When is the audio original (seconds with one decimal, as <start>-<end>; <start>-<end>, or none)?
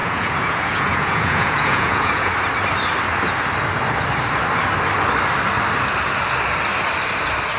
2.3-7.6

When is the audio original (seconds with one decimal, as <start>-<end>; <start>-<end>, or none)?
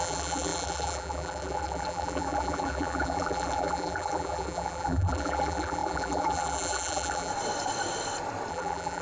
7.3-8.5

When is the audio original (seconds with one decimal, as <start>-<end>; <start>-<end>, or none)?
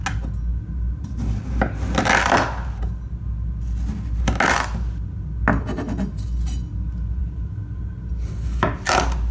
0.0-7.2; 7.8-9.3